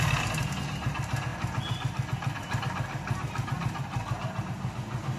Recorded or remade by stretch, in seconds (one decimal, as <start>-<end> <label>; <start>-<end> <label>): 0.0-5.2 recorded